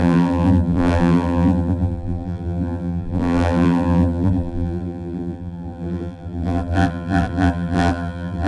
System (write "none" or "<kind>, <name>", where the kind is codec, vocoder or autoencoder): vocoder, BigVGAN v2